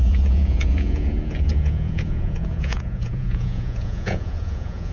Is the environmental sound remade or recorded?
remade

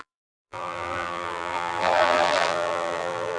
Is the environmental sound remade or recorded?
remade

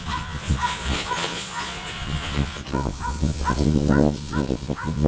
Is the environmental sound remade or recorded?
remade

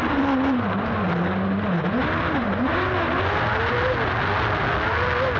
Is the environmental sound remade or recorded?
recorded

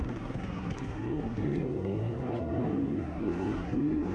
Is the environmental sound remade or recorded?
remade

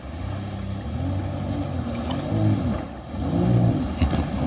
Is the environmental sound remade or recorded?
recorded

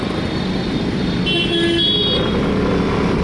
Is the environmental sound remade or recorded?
recorded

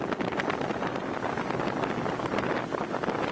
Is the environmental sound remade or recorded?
recorded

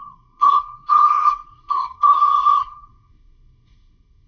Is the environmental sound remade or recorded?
remade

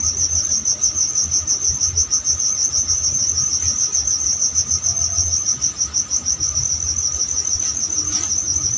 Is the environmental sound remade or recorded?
recorded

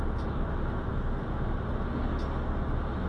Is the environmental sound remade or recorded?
recorded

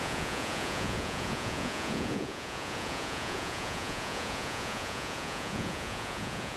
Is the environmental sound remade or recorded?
remade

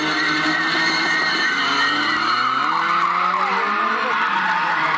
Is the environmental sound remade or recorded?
recorded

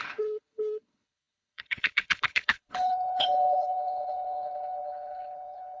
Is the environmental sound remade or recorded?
remade